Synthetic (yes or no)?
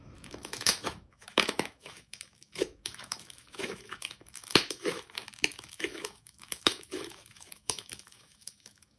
yes